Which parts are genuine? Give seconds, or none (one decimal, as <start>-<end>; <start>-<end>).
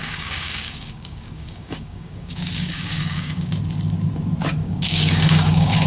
3.5-4.6